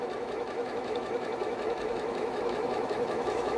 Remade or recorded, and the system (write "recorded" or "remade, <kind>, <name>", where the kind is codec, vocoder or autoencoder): remade, autoencoder, DAC-VAE